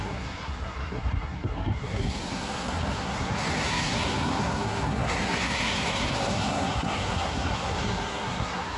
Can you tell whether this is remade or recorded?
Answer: remade